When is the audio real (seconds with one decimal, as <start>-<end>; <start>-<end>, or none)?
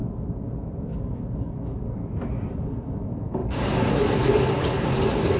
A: 0.0-0.8; 2.0-2.6